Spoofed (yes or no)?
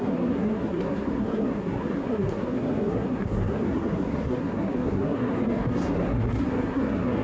yes